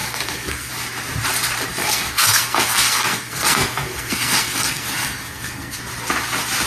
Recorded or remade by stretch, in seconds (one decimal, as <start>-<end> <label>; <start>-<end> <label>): 0.0-0.7 remade; 0.7-1.8 recorded; 1.8-5.8 remade; 5.8-6.7 recorded